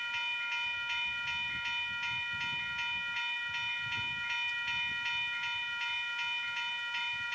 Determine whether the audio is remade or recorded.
recorded